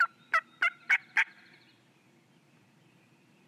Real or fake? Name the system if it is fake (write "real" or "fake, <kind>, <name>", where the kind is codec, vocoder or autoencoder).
fake, vocoder, BigVGAN v2